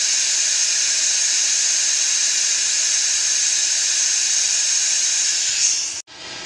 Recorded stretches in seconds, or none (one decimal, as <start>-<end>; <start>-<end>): 5.8-6.5